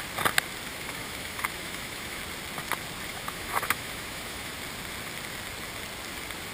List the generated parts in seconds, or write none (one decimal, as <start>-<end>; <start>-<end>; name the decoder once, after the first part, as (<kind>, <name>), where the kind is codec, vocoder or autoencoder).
0.7-2.2 (autoencoder, DAC-VAE); 3.1-4.5